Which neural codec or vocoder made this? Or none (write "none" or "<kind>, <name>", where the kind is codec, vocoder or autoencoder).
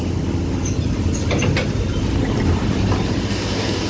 none